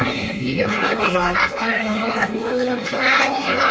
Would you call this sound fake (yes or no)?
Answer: yes